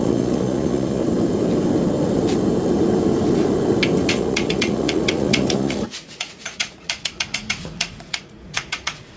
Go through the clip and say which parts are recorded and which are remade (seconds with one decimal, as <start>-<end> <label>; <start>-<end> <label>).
0.0-1.0 remade; 1.0-4.1 recorded; 4.1-9.2 remade